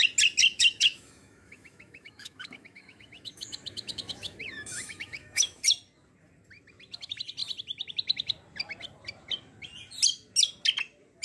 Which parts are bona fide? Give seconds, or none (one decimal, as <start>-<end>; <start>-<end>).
0.0-0.4; 5.6-11.2